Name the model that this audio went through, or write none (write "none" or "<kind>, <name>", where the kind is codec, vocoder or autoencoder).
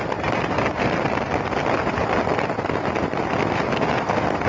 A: none